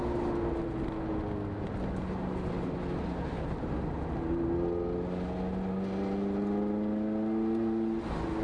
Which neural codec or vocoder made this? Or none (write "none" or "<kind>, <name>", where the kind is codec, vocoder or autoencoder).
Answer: none